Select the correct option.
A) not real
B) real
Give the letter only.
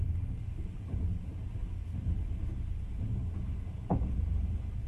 B